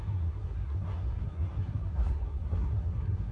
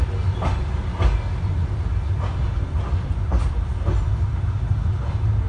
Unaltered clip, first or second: second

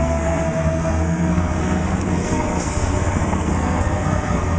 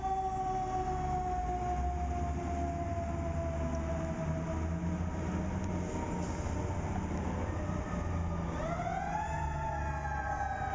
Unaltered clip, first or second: second